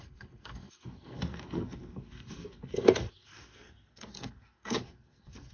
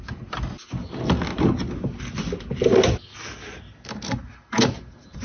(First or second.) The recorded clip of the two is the second